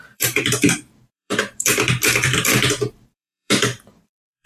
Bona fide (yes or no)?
no